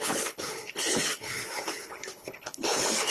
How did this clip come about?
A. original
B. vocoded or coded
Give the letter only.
B